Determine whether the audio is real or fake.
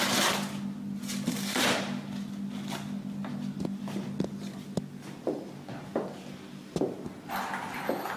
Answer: real